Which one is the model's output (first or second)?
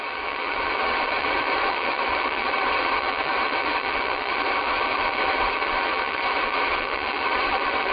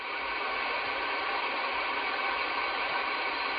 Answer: first